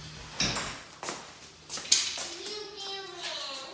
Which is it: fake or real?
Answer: real